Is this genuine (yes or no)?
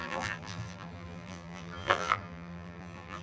no